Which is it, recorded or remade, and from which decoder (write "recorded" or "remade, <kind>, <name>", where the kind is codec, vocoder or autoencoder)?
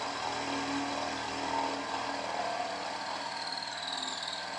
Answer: recorded